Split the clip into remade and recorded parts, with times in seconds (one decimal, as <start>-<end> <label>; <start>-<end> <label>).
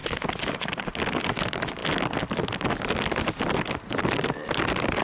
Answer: 0.0-5.0 recorded